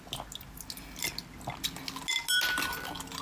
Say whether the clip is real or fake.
real